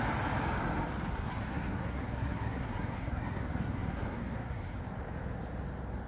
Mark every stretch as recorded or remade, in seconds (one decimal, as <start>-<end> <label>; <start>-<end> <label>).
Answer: 0.0-1.1 recorded; 1.1-4.8 remade; 4.8-6.1 recorded